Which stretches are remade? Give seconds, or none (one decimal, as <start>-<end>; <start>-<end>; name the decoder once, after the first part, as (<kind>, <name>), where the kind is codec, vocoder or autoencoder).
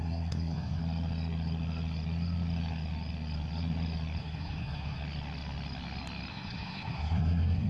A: 0.0-0.8 (codec, SNAC); 4.2-5.0; 6.3-7.7